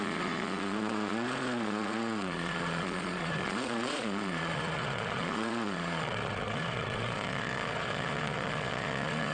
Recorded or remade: remade